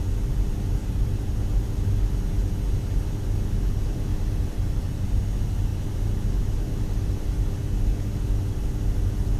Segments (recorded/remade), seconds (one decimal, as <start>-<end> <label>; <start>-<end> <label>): 0.0-0.8 recorded; 0.8-1.4 remade; 1.4-4.1 recorded; 4.1-5.2 remade; 5.2-9.4 recorded